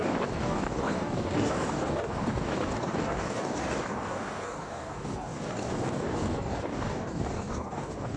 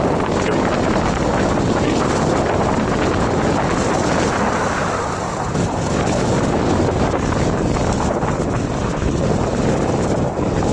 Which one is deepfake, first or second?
first